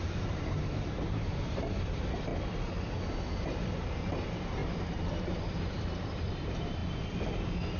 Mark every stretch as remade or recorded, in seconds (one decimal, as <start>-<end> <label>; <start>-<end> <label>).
0.0-2.3 remade; 2.3-3.4 recorded; 3.4-6.8 remade; 6.8-7.8 recorded